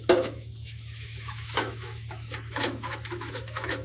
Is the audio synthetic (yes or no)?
yes